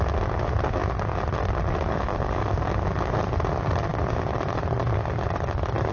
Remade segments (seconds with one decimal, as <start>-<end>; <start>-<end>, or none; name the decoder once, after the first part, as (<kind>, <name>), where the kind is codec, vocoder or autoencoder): 2.1-2.6 (codec, DAC)